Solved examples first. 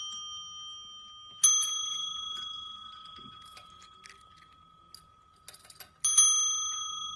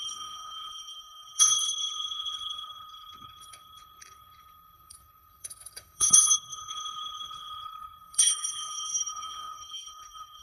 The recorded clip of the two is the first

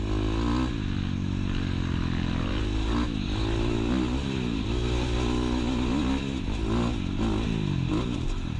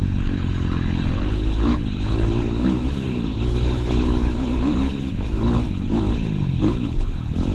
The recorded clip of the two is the first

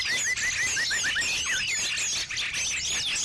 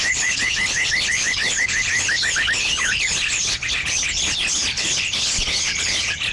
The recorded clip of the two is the first